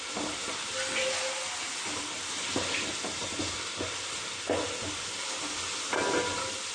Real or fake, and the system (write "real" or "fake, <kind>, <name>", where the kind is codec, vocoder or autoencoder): real